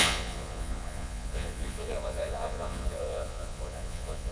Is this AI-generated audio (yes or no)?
yes